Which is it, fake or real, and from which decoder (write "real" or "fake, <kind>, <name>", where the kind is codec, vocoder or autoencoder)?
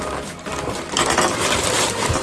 fake, vocoder, BigVGAN v2